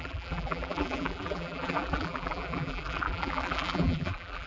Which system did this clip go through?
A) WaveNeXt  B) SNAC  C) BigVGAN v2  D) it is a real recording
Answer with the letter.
C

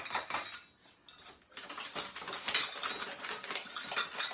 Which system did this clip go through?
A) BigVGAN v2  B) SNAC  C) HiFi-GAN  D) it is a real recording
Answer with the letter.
D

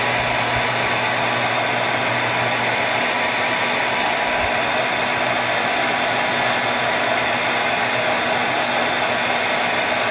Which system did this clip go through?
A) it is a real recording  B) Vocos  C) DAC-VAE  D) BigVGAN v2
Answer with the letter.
A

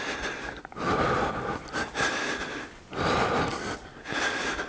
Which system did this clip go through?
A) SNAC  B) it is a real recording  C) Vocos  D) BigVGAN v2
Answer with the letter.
B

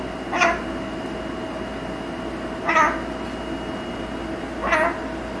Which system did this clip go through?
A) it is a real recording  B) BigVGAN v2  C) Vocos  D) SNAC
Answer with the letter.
A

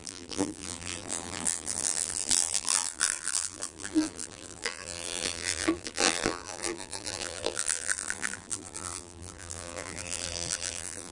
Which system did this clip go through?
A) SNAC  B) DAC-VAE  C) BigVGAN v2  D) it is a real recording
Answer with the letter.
C